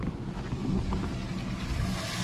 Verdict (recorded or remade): recorded